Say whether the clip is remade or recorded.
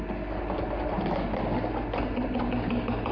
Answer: recorded